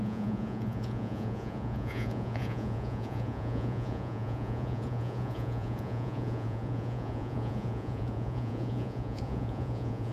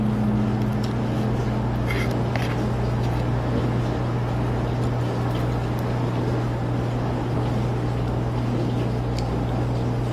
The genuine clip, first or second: second